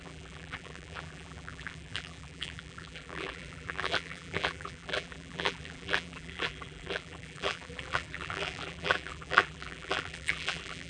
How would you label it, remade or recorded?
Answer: remade